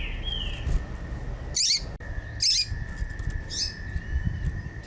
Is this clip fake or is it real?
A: real